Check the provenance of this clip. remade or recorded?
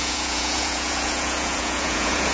remade